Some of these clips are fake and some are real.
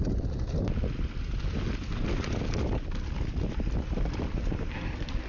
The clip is real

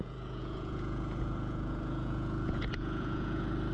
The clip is fake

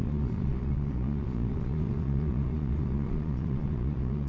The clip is fake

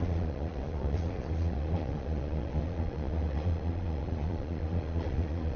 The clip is fake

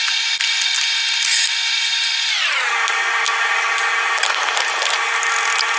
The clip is real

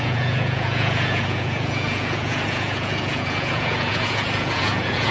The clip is fake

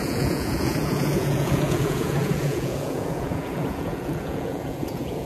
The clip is fake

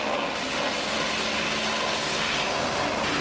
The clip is real